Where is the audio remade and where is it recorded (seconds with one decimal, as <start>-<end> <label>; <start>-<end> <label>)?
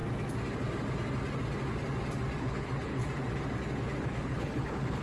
0.0-2.4 recorded; 2.4-3.0 remade; 3.0-4.0 recorded; 4.0-5.0 remade